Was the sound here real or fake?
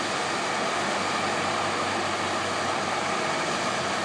real